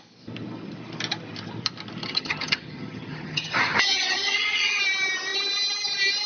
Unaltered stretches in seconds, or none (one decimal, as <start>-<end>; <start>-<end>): 0.0-2.0; 4.8-6.3